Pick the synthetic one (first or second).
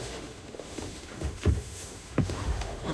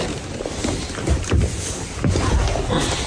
first